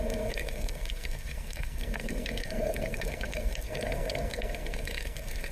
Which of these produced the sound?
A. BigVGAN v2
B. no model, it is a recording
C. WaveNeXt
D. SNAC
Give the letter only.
D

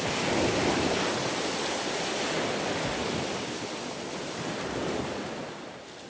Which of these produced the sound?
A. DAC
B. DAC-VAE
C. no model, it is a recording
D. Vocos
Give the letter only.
C